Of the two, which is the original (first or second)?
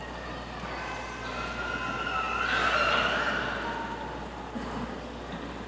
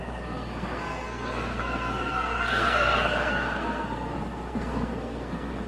first